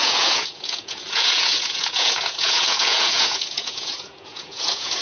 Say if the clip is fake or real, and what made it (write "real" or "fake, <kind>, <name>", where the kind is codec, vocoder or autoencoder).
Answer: fake, vocoder, Vocos